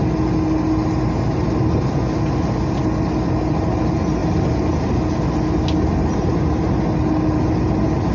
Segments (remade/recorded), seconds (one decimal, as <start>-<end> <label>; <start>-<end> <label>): 0.0-8.1 recorded